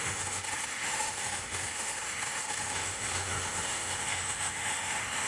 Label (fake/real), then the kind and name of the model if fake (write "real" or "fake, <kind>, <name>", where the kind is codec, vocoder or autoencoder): fake, autoencoder, DAC-VAE